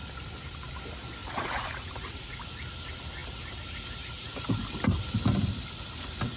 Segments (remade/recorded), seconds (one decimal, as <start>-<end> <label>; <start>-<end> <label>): 0.0-1.2 recorded; 1.2-2.4 remade; 2.4-6.4 recorded